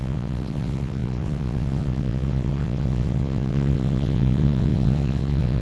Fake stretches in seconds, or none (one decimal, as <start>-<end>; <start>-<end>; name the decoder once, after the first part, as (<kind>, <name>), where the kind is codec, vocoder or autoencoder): 0.0-5.6 (vocoder, WaveNeXt)